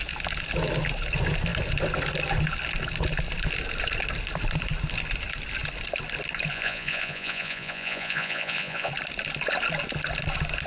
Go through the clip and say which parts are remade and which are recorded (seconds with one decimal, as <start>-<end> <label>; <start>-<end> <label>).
0.0-6.5 recorded; 6.5-8.9 remade; 8.9-10.7 recorded